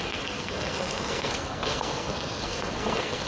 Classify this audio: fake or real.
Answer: fake